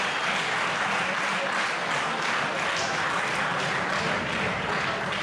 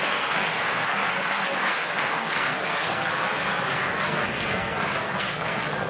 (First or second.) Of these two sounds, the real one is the first